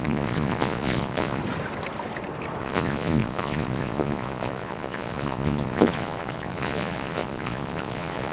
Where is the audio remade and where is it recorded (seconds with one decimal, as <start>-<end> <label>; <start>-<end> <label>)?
0.0-1.4 remade; 1.4-2.6 recorded; 2.6-8.3 remade